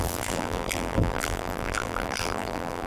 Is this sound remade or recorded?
remade